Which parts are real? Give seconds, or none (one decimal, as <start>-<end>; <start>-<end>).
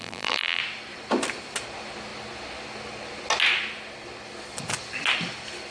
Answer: 0.6-5.7